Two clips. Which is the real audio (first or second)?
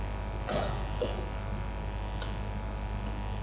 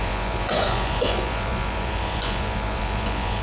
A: first